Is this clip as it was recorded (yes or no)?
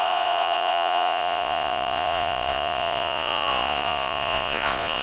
no